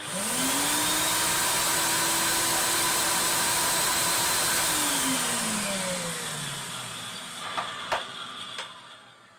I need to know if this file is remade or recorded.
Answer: recorded